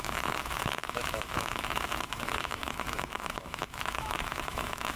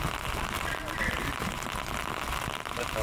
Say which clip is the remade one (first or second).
first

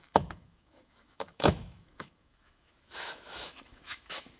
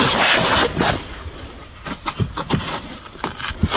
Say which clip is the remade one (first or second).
first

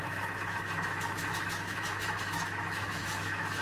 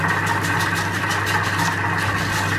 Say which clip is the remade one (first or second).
first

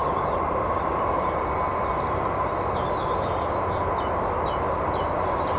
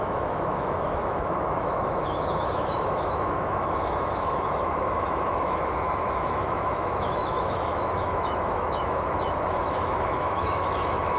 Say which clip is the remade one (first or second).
second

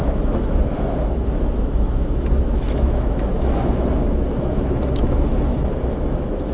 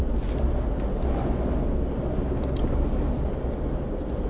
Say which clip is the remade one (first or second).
first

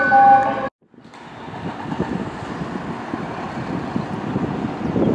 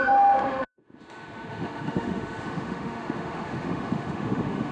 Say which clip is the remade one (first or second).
second